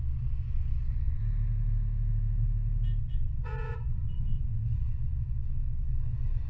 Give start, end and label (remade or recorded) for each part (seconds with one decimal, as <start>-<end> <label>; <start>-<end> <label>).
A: 0.0-1.2 remade; 1.2-3.0 recorded; 3.0-6.5 remade